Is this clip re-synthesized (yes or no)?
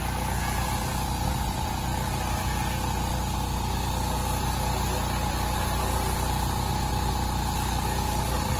no